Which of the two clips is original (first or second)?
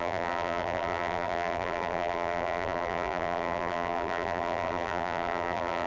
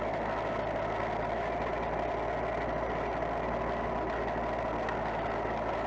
second